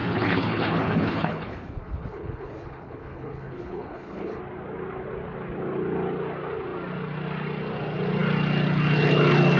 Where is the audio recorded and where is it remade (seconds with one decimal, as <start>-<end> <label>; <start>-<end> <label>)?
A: 0.0-4.4 remade; 4.4-9.6 recorded